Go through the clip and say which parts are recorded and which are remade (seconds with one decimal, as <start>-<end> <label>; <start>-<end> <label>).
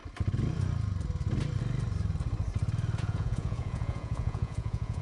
0.0-3.0 recorded; 3.0-5.0 remade